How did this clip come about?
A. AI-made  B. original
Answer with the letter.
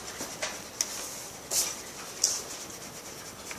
B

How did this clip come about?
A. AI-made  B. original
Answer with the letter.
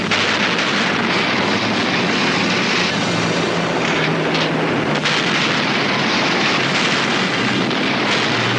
B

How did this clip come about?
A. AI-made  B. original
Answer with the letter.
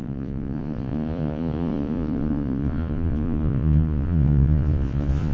A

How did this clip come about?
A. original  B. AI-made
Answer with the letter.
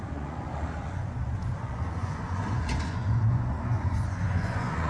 B